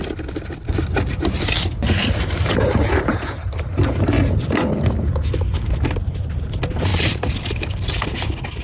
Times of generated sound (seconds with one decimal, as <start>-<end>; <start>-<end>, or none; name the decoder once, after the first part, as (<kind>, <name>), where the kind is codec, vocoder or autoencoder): 2.0-4.2 (vocoder, BigVGAN v2); 6.0-6.5; 6.9-7.6